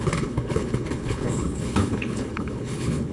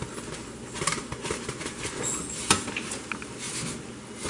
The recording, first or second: second